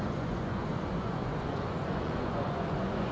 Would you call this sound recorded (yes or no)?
no